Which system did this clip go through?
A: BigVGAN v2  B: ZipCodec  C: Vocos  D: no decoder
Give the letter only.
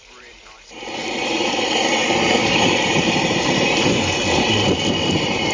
A